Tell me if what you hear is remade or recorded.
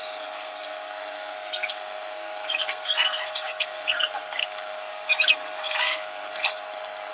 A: remade